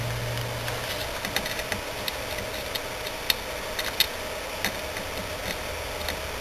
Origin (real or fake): real